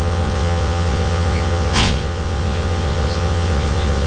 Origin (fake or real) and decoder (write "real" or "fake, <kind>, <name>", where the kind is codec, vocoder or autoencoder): fake, vocoder, WaveNeXt